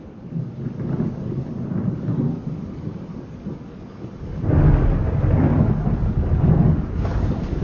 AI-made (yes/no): yes